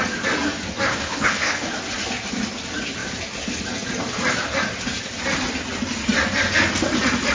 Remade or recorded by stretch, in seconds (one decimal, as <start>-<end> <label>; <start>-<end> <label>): 0.0-0.9 recorded; 0.9-1.7 remade; 1.7-7.3 recorded